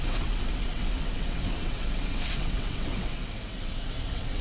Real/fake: fake